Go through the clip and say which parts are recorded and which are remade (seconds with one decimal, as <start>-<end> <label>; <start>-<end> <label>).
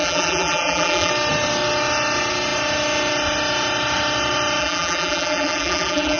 0.0-1.1 remade; 1.1-4.6 recorded; 4.6-6.2 remade